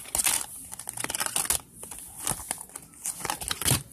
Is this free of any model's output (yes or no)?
yes